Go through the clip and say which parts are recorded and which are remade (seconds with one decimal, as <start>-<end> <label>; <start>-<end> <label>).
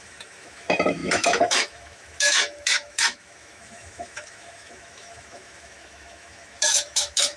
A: 0.0-7.4 remade